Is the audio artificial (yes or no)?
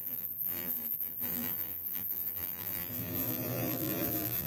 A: yes